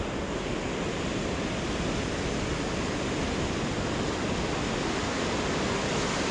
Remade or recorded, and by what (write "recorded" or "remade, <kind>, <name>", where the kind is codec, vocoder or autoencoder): recorded